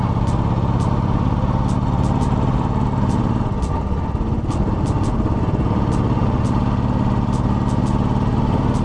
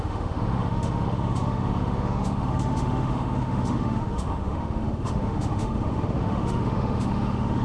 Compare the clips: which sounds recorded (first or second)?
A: first